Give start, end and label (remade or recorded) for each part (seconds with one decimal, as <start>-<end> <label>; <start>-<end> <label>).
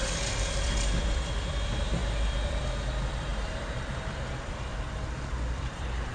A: 0.0-3.3 remade; 3.3-4.3 recorded; 4.3-6.1 remade